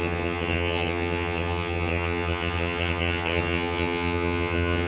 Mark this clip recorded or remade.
remade